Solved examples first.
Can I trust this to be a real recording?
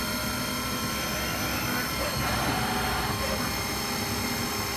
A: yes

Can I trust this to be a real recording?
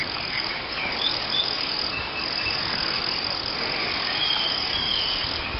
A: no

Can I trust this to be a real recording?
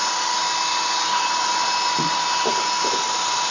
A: yes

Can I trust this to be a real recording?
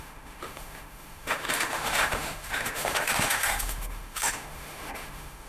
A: no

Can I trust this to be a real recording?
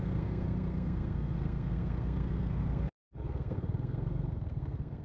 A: no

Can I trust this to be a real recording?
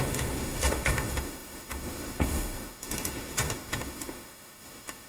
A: no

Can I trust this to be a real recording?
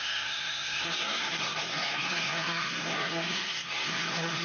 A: no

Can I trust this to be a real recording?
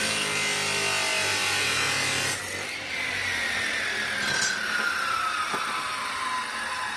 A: yes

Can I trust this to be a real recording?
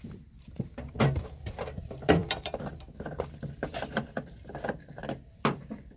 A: no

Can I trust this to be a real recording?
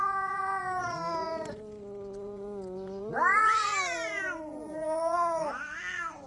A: no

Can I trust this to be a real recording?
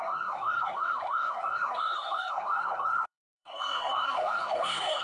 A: no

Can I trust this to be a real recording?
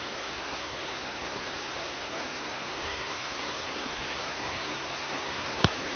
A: no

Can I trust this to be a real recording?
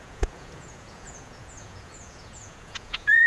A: no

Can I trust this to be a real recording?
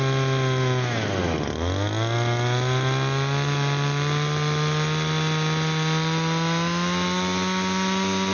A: yes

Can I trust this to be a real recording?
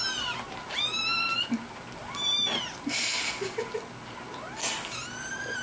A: yes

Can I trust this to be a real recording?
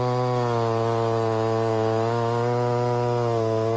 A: yes